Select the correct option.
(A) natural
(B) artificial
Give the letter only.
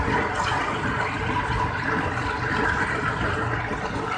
A